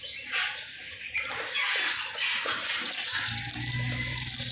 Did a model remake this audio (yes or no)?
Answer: no